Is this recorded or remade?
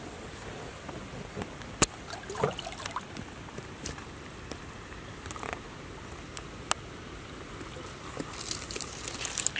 recorded